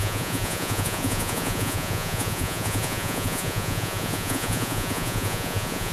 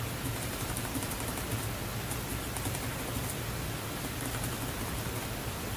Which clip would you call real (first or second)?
second